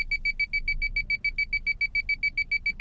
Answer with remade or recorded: recorded